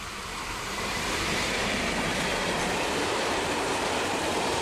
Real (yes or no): no